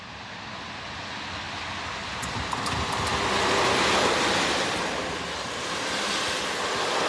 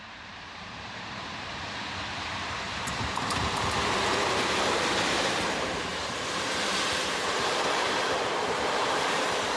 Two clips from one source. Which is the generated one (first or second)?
second